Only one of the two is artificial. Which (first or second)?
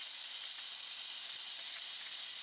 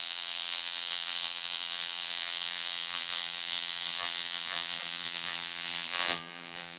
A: second